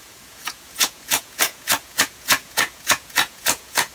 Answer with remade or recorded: remade